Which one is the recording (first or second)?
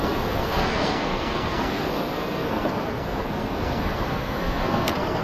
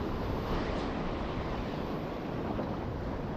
second